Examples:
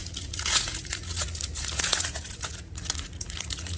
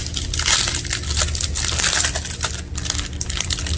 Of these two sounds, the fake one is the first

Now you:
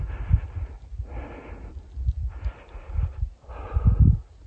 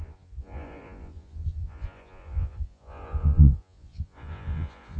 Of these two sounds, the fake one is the second